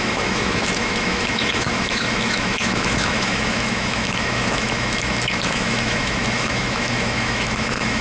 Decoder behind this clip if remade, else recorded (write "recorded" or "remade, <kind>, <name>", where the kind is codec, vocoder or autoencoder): remade, autoencoder, DAC-VAE